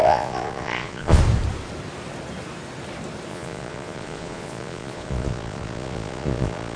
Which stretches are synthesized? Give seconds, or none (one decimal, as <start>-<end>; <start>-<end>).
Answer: 0.0-1.2; 3.3-6.8